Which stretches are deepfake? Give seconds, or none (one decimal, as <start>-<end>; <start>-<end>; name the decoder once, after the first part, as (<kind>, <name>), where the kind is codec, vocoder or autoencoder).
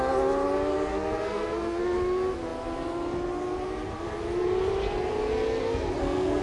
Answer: 0.9-1.8 (codec, SNAC); 5.6-6.4